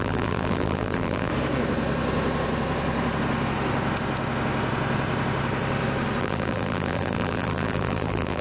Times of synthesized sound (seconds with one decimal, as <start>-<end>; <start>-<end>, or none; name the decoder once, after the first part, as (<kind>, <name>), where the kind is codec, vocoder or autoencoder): 0.0-1.3 (vocoder, BigVGAN v2); 6.2-8.4